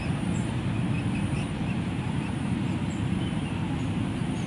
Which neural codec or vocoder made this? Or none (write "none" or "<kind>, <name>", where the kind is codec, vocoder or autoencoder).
vocoder, BigVGAN v2